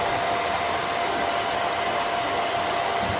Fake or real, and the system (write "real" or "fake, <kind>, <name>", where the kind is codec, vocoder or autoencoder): real